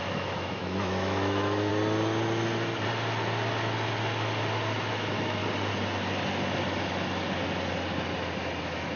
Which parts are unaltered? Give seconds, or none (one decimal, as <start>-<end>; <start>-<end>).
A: 1.7-4.9; 5.4-8.6